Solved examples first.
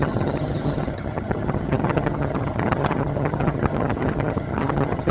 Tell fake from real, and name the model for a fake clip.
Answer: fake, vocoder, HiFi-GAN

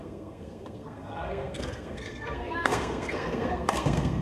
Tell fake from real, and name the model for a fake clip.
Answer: fake, codec, SNAC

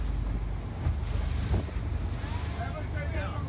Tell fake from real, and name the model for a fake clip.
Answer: real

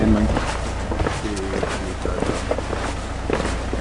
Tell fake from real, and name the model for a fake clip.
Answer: real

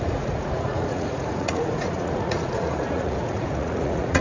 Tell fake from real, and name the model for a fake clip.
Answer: fake, vocoder, Vocos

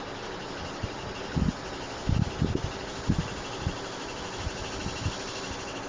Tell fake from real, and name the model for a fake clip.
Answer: real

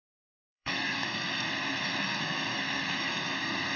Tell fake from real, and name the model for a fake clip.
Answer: fake, codec, SNAC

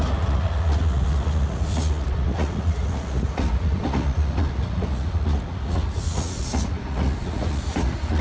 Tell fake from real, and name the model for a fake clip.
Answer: fake, vocoder, Vocos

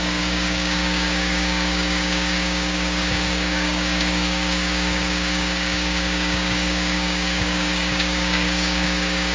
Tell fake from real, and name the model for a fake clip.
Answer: fake, codec, DAC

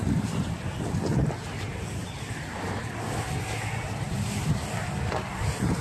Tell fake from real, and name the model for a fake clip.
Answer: real